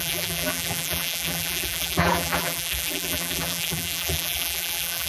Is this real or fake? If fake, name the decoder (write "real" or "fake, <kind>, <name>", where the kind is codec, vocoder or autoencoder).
fake, vocoder, BigVGAN v2